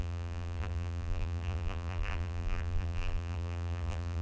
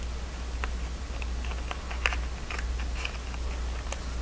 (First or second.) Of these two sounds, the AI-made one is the first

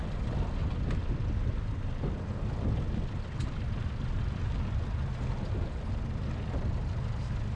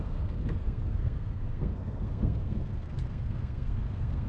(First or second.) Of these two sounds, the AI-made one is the second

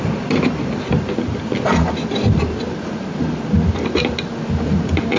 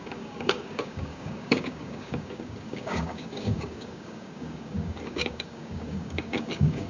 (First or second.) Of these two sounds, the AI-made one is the second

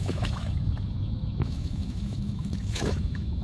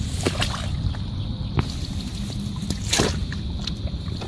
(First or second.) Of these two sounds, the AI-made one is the first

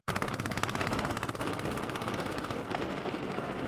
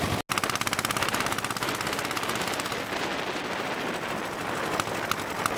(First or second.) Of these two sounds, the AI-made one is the first